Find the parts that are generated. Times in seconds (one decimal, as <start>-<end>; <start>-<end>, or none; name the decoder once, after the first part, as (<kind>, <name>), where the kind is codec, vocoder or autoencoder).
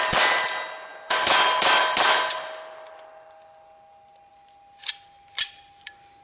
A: none